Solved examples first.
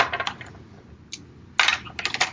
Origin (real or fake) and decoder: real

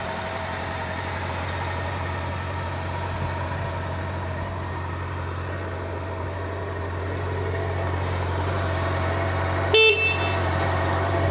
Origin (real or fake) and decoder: real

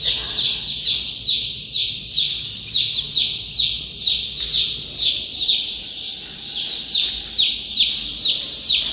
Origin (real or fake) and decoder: real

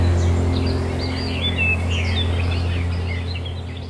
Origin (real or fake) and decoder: real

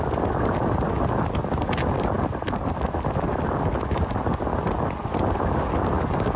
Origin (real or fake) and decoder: real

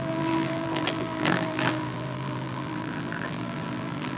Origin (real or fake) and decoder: fake, vocoder, BigVGAN v2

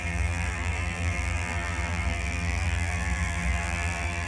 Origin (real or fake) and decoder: fake, vocoder, BigVGAN v2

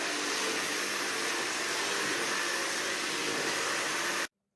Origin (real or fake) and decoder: real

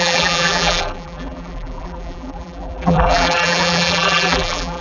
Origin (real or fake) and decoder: fake, vocoder, BigVGAN v2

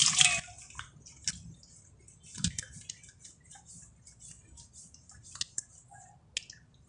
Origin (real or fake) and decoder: real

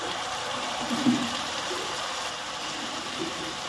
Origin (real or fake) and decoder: fake, vocoder, BigVGAN v2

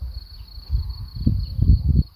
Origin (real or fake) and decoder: real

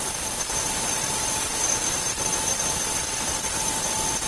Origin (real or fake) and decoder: fake, vocoder, BigVGAN v2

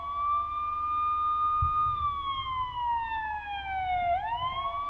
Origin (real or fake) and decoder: real